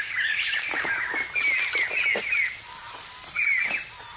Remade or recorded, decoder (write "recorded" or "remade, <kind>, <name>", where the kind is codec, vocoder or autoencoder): recorded